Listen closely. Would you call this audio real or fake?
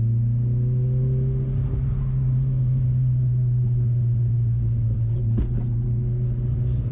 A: real